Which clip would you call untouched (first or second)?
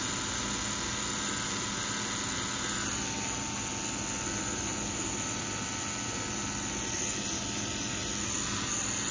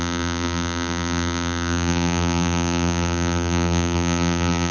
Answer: first